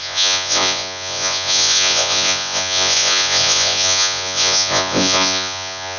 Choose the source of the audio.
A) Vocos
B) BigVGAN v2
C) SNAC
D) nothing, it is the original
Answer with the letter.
A